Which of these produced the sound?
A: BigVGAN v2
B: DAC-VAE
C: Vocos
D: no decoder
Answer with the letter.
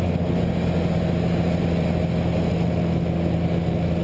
D